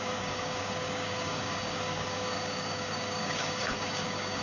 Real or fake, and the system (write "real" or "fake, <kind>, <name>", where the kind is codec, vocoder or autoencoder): fake, codec, DAC